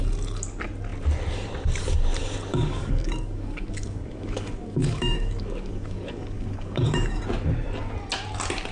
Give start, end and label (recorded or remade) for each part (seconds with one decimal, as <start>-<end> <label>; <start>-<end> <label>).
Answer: 0.0-2.5 recorded; 2.5-7.2 remade; 7.2-8.7 recorded